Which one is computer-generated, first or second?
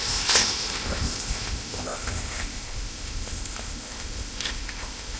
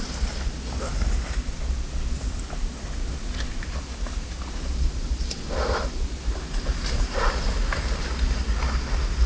first